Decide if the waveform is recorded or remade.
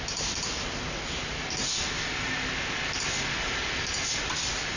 recorded